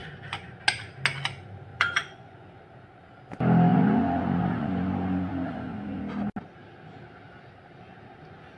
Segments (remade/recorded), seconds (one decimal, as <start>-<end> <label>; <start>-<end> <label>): 0.0-0.5 remade; 0.5-1.7 recorded; 1.7-2.6 remade; 2.6-3.7 recorded; 3.7-6.0 remade; 6.0-8.6 recorded